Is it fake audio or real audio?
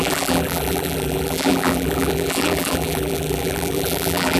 fake